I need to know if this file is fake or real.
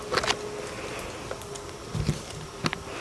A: real